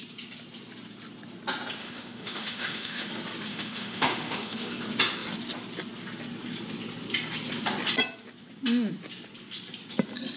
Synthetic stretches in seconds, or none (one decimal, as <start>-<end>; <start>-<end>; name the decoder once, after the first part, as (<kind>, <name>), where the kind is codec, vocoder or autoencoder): 1.8-3.1 (autoencoder, DAC-VAE); 3.5-4.7